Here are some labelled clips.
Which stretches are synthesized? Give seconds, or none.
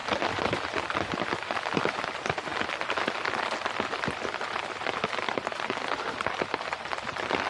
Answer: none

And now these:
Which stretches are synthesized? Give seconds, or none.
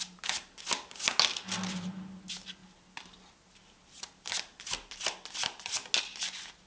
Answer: none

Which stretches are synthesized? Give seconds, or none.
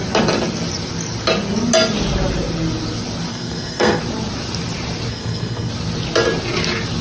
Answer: 3.3-4.0 (codec, SNAC); 5.1-5.7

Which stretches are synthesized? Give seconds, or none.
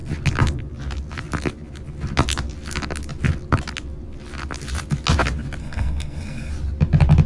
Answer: 5.6-6.5 (codec, SNAC)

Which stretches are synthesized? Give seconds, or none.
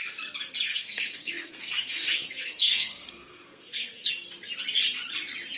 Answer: 0.7-4.1 (codec, SNAC)